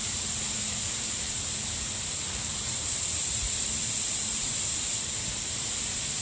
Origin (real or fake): fake